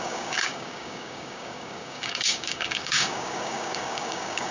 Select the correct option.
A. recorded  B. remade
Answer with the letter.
B